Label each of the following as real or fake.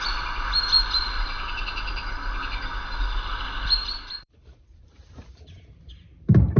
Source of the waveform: fake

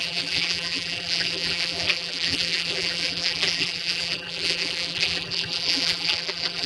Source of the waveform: fake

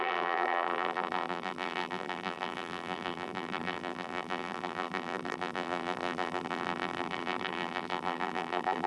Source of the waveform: fake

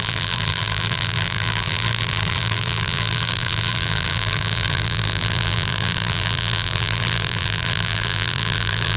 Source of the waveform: fake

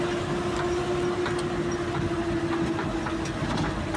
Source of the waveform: real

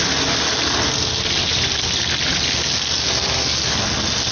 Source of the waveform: real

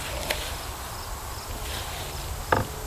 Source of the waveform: real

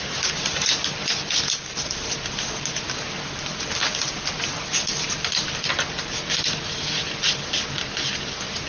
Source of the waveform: real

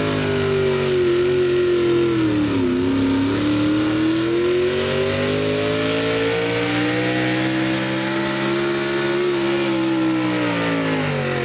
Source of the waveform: real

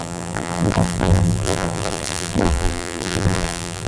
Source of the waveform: fake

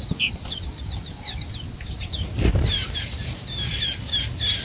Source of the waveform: real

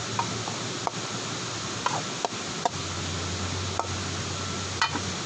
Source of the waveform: real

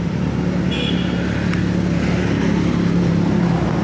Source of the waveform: real